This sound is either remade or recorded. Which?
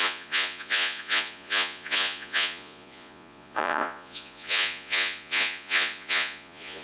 remade